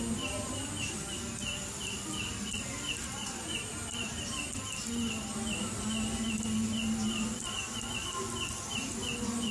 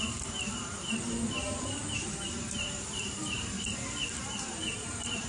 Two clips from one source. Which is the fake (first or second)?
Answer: second